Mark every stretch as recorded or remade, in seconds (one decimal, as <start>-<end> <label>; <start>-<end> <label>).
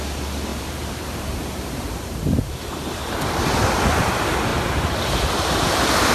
0.0-0.5 recorded; 0.5-2.8 remade; 2.8-4.5 recorded; 4.5-5.0 remade; 5.0-6.1 recorded